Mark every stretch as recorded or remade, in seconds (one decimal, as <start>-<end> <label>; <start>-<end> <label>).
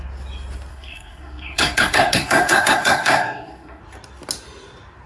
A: 0.0-0.7 recorded; 0.7-3.8 remade; 3.8-5.1 recorded